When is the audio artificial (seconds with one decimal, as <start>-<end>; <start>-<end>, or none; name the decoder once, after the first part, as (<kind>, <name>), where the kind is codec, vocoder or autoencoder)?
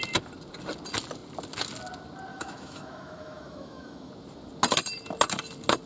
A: 2.3-4.1 (autoencoder, DAC-VAE)